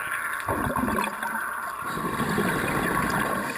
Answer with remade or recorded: recorded